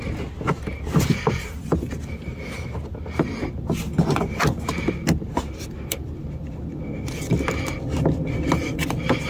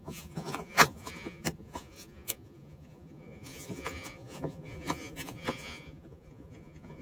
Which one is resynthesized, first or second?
second